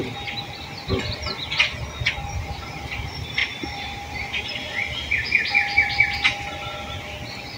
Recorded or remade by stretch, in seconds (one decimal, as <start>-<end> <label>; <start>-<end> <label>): 0.0-2.4 recorded; 2.4-4.8 remade; 4.8-7.6 recorded